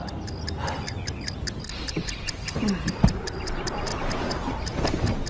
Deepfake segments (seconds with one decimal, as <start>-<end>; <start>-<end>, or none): 3.9-4.5